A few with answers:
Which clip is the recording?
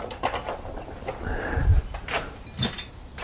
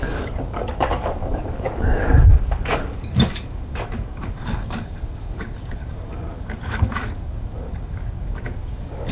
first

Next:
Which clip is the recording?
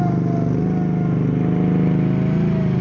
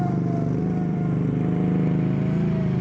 first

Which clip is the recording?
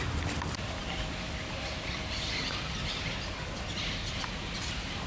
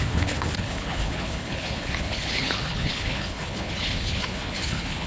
first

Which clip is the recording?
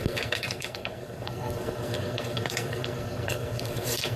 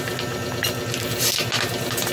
second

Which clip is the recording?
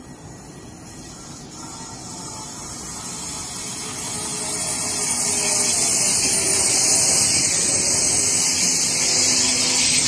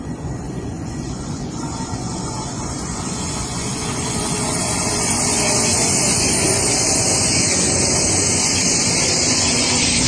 first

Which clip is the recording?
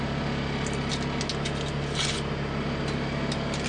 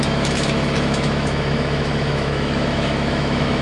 first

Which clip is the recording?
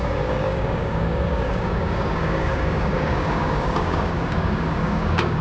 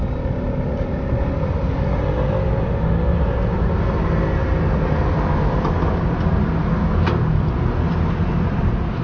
second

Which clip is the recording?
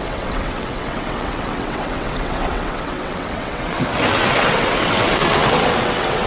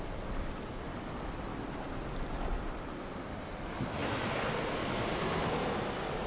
second